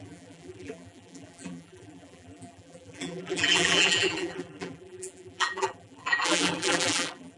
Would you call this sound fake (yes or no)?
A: yes